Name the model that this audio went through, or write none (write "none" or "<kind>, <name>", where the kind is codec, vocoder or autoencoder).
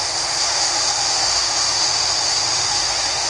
autoencoder, DAC-VAE